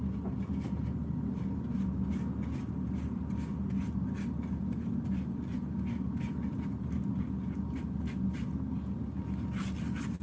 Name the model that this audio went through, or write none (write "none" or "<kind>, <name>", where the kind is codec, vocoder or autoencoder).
none